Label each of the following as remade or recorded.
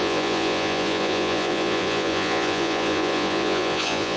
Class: remade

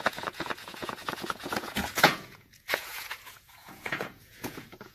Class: remade